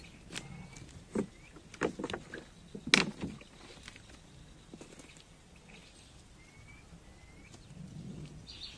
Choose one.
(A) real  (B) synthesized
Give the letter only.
A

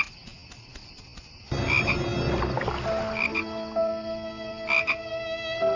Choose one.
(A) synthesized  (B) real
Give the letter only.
B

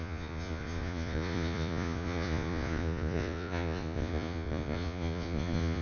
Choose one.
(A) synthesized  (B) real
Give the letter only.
A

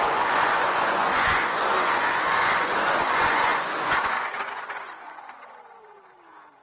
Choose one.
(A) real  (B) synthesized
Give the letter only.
B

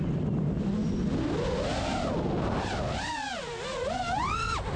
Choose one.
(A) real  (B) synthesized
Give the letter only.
A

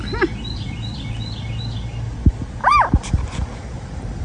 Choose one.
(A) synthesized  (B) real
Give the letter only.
B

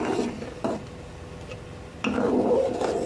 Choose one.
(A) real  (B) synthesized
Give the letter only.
A